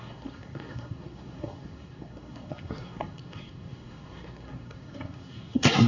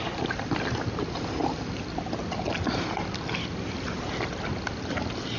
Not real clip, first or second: first